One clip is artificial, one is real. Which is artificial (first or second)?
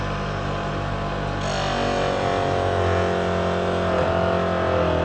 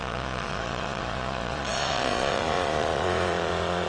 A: second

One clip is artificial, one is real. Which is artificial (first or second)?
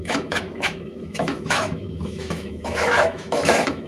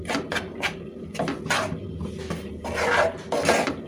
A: first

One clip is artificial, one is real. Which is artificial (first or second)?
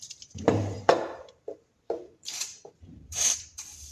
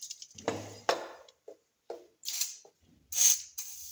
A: first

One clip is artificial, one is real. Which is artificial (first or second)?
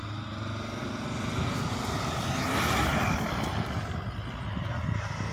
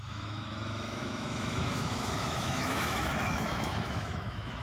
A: second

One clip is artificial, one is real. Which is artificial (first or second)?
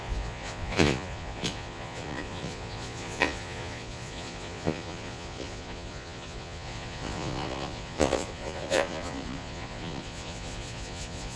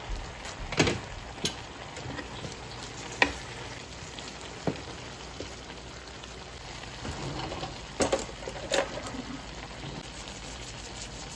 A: first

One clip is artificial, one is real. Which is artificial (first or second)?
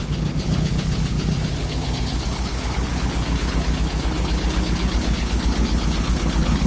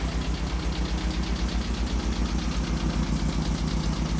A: first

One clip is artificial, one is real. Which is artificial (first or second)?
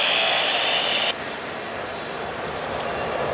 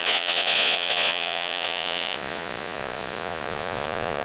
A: second